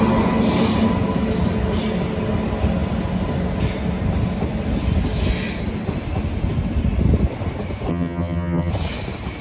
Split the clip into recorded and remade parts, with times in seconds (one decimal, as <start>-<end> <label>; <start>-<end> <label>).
0.0-7.9 recorded; 7.9-8.7 remade; 8.7-9.4 recorded